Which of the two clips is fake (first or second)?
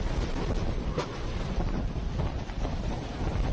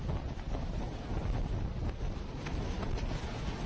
first